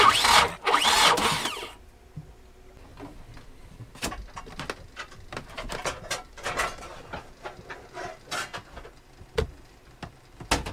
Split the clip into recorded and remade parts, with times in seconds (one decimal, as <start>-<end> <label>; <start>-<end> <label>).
0.0-10.7 recorded